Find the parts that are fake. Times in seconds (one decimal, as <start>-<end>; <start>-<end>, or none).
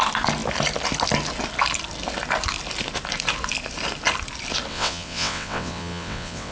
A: 4.7-6.5